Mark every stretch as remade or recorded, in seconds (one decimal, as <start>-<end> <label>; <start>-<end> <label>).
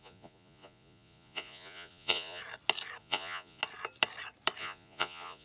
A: 0.0-2.4 remade; 2.4-3.0 recorded; 3.0-3.6 remade; 3.6-4.6 recorded; 4.6-5.4 remade